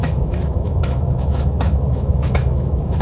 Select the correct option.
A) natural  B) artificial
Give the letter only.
B